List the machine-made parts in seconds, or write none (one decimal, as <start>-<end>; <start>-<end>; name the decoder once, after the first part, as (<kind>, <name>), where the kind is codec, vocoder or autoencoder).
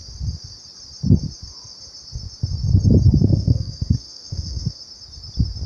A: 3.2-4.8 (codec, SNAC)